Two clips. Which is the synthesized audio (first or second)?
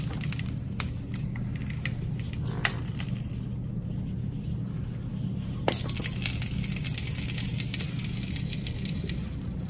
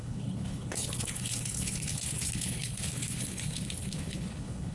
second